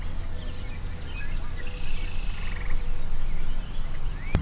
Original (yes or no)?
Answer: yes